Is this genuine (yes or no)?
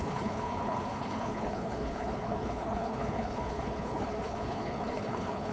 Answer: no